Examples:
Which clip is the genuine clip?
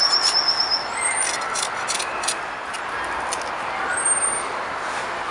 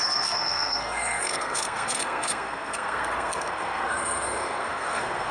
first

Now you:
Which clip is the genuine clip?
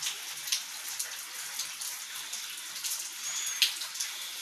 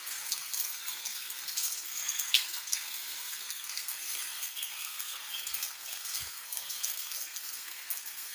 first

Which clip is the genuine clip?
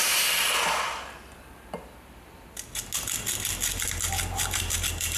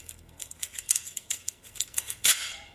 first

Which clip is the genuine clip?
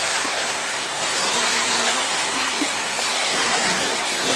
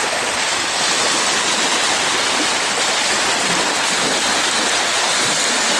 second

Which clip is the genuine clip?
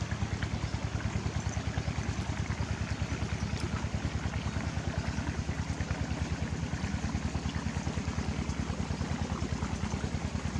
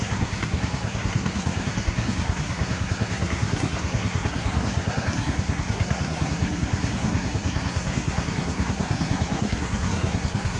first